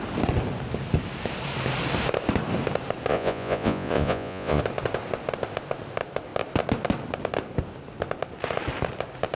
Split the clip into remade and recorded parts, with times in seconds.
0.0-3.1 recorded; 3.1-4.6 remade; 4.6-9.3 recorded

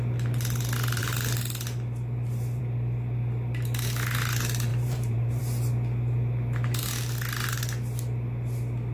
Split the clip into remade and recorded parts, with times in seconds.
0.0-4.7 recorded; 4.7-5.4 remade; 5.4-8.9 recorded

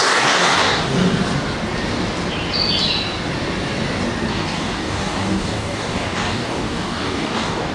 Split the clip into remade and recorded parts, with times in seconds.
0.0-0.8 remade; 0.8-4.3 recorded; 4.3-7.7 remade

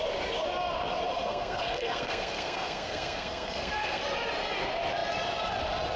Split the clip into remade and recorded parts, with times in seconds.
0.0-1.1 recorded; 1.1-4.0 remade; 4.0-6.0 recorded

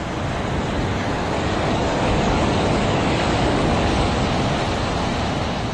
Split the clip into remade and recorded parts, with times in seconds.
0.0-0.9 recorded; 0.9-4.3 remade; 4.3-5.7 recorded

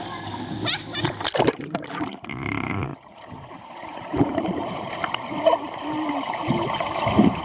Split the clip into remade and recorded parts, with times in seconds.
0.0-7.4 remade

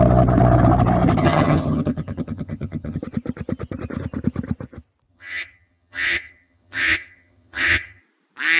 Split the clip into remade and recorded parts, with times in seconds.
0.0-1.2 recorded; 1.2-3.0 remade; 3.0-5.1 recorded; 5.1-8.0 remade; 8.0-8.6 recorded

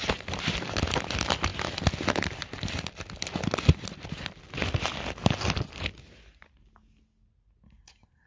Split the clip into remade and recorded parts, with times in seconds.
0.0-8.3 recorded